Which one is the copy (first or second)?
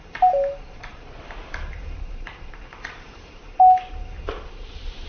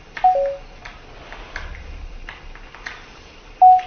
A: first